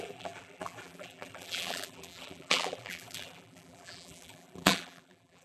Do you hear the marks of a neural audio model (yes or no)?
yes